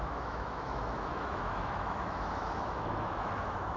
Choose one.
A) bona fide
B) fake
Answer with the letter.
B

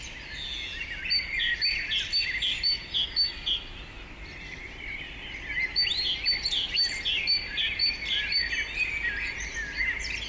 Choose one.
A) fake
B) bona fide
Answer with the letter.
B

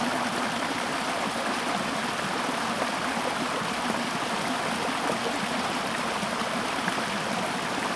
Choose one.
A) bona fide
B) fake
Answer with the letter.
A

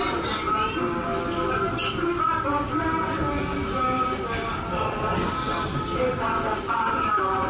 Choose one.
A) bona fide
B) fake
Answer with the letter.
A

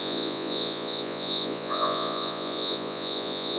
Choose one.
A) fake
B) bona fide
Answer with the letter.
A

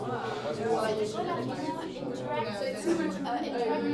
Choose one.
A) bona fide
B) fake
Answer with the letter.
A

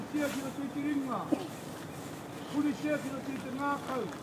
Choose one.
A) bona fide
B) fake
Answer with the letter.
A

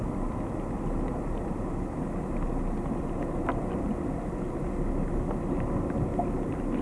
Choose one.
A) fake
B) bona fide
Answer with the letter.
B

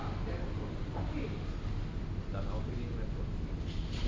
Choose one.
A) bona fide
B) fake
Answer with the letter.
A